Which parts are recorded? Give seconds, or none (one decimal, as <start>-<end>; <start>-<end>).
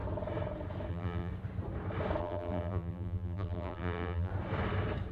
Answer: 0.0-0.9; 1.3-2.2; 4.3-5.1